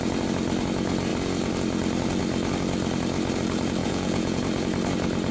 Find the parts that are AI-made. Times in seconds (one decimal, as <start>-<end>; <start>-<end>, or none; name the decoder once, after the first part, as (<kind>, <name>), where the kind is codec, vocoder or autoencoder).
3.8-4.4 (vocoder, Vocos)